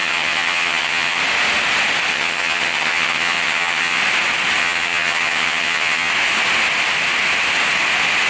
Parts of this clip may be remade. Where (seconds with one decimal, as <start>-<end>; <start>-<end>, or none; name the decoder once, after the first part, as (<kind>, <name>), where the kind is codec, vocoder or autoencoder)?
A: 0.0-1.2 (vocoder, HiFi-GAN); 2.1-4.0; 4.6-6.1